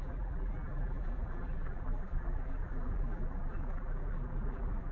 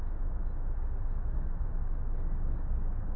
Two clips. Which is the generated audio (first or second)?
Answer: first